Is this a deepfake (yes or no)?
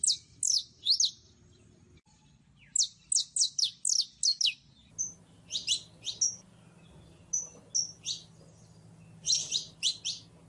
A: no